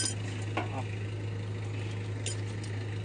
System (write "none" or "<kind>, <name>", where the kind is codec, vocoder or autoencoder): none